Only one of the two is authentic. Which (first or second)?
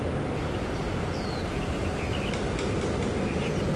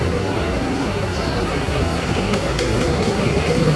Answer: first